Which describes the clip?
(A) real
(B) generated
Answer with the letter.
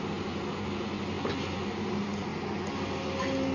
A